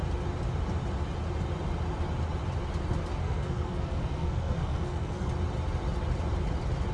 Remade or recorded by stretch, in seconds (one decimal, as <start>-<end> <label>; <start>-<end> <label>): 0.0-3.2 recorded; 3.2-5.3 remade; 5.3-6.9 recorded